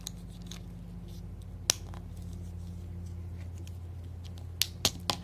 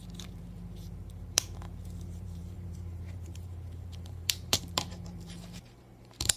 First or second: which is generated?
second